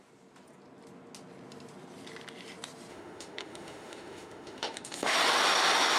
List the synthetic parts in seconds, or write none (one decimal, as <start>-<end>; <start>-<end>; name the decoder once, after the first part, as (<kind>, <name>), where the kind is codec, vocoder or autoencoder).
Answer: 2.9-5.2 (autoencoder, DAC-VAE)